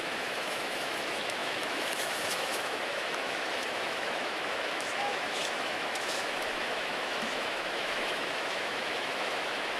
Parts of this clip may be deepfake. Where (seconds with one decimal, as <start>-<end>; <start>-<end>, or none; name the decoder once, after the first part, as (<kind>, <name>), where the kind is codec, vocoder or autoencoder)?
0.0-9.8 (autoencoder, DAC-VAE)